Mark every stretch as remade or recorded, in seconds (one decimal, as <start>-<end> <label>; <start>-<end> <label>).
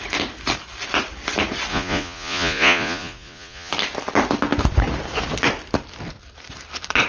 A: 0.0-1.7 recorded; 1.7-3.7 remade; 3.7-7.1 recorded